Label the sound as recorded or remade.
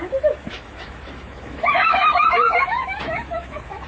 remade